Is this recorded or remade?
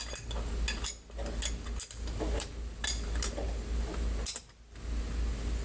recorded